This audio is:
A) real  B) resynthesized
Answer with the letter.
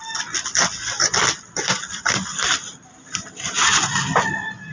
A